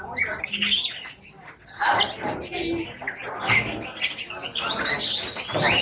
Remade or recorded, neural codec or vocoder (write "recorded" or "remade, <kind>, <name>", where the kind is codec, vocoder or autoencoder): recorded